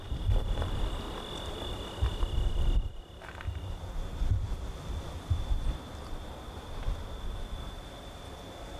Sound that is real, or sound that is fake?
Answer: real